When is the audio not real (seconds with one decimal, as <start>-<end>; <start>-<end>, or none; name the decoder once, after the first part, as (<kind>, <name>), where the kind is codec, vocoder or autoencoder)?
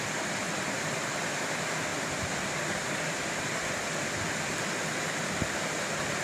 none